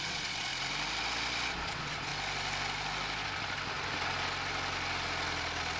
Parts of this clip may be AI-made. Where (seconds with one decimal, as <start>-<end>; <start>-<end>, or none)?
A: 0.0-0.5; 1.5-2.1

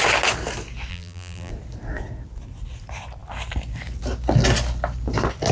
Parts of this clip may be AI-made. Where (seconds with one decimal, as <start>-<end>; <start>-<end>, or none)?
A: 0.9-1.5